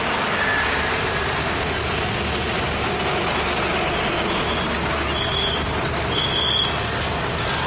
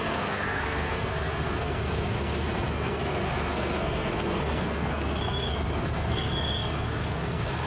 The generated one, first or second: second